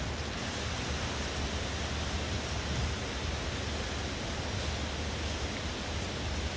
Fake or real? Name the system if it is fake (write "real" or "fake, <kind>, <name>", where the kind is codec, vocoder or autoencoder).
real